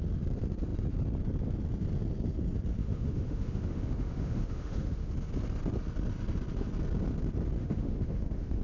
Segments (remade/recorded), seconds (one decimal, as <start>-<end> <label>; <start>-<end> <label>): 0.0-2.8 recorded; 2.8-5.1 remade; 5.1-7.6 recorded; 7.6-8.6 remade